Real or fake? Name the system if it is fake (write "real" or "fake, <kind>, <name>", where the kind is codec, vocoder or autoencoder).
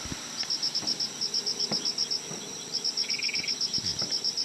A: real